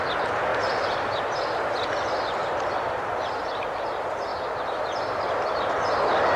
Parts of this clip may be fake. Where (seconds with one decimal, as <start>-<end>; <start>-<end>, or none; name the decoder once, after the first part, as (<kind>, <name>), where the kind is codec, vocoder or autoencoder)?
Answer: 0.5-1.2 (vocoder, BigVGAN v2); 2.4-3.1; 4.3-5.8